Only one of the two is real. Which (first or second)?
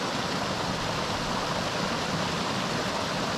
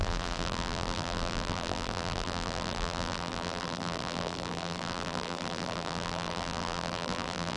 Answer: first